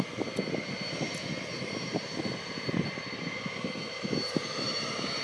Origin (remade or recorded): recorded